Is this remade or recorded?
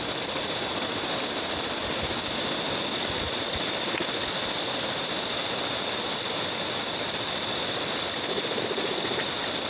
remade